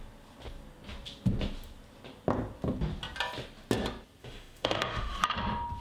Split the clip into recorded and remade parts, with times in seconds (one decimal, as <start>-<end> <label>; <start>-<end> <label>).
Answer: 0.0-4.2 recorded; 4.2-5.2 remade; 5.2-5.8 recorded